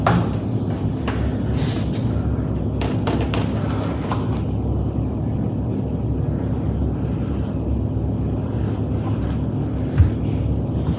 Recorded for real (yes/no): yes